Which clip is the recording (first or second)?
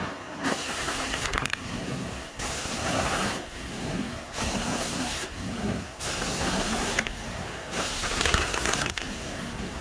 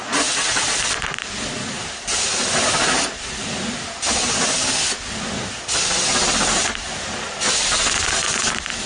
second